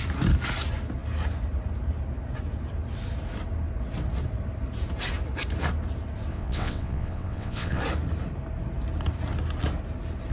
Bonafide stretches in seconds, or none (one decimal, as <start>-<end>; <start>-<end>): 0.0-6.3; 7.8-10.3